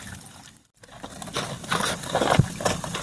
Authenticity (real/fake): real